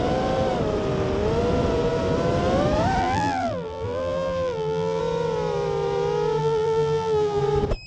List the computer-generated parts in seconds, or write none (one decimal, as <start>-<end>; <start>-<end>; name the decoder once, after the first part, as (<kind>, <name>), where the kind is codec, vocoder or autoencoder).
3.0-5.0 (vocoder, BigVGAN v2); 6.4-7.4